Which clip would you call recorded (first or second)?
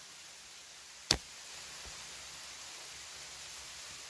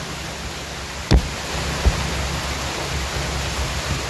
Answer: second